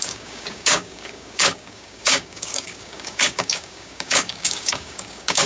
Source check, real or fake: fake